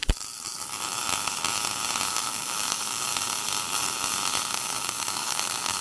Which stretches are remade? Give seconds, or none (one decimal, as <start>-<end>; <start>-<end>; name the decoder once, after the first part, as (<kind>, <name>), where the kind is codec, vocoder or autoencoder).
2.1-3.1 (codec, DAC); 4.5-5.8